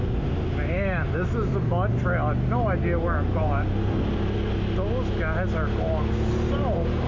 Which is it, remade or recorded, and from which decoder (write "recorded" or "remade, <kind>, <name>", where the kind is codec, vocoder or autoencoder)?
recorded